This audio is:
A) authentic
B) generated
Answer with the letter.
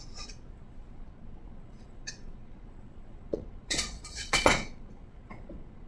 B